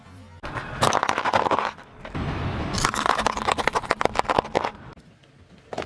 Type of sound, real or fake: real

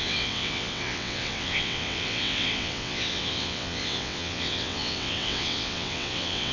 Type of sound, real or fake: fake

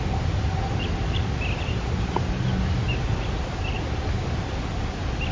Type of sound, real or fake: real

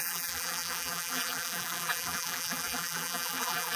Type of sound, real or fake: fake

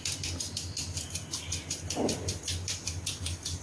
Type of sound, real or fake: real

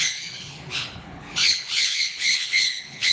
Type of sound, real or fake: fake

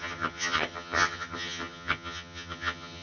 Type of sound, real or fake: fake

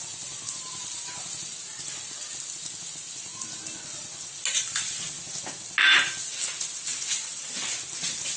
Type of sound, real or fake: real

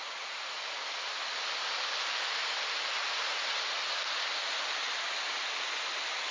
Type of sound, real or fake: real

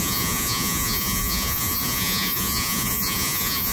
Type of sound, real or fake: fake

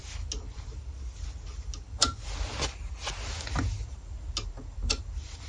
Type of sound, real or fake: real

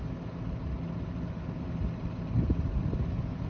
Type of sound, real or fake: real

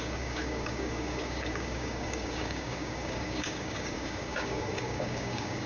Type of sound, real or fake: fake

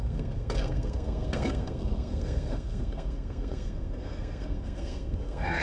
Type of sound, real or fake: fake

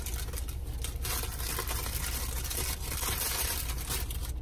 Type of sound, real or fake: real